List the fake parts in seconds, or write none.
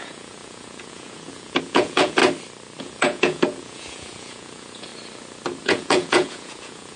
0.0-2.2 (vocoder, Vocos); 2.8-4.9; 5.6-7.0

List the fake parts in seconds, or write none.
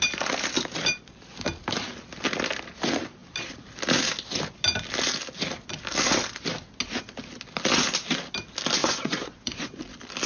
8.8-9.8 (vocoder, Vocos)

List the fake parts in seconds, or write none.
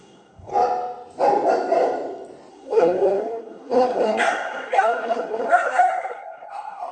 0.0-0.5 (codec, SNAC); 2.5-6.9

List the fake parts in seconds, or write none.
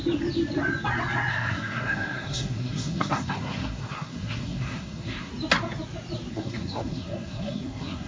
1.3-5.3 (codec, SNAC); 6.3-8.1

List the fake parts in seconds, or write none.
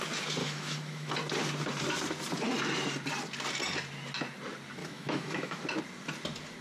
0.4-1.1 (autoencoder, DAC-VAE); 4.8-5.6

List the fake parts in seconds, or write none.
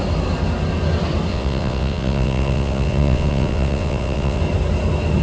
1.3-4.4 (vocoder, WaveNeXt)